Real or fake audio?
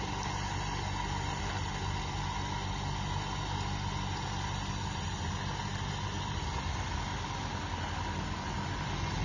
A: real